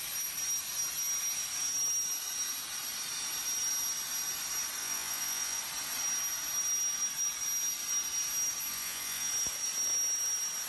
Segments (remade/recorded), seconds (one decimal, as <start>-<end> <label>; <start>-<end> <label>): 0.0-4.8 recorded; 4.8-5.6 remade; 5.6-8.7 recorded; 8.7-9.3 remade; 9.3-10.7 recorded